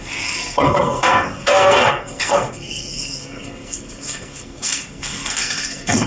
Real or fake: fake